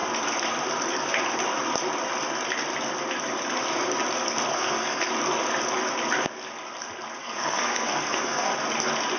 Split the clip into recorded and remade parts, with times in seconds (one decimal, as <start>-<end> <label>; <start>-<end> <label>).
0.0-4.5 recorded; 4.5-5.1 remade; 5.1-7.2 recorded; 7.2-8.5 remade; 8.5-9.2 recorded